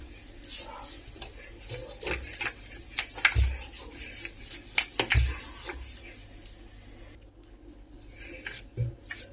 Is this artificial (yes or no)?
no